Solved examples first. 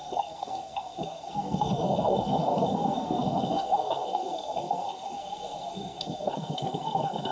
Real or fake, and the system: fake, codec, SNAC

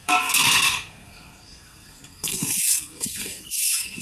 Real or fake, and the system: fake, codec, SNAC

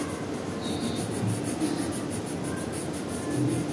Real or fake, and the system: real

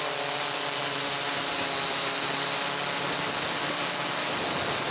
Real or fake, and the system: real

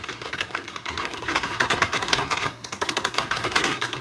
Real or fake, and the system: fake, codec, SNAC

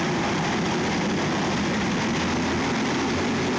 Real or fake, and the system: real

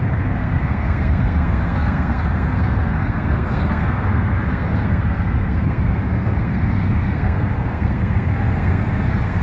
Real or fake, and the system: fake, codec, SNAC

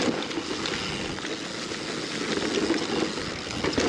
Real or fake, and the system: real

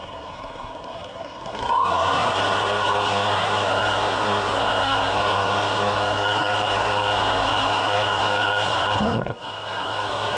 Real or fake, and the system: fake, codec, SNAC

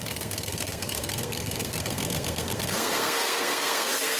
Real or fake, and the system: fake, codec, SNAC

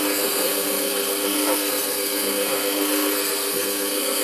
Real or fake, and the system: fake, codec, SNAC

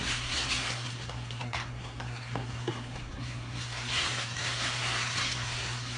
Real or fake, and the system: fake, codec, SNAC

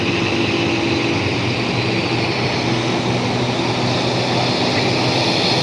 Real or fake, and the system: real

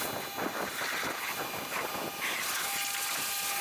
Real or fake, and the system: real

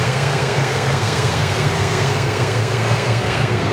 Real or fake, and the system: fake, codec, SNAC